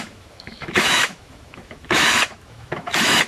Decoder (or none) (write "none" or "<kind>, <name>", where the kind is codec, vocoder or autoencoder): autoencoder, DAC-VAE